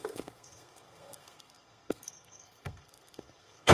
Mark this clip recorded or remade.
remade